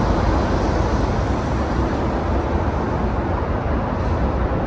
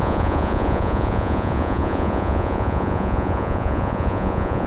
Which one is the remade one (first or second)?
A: second